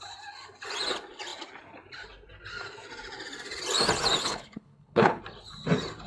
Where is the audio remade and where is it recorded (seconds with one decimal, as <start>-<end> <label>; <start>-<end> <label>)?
0.0-4.2 recorded; 4.2-5.2 remade; 5.2-6.1 recorded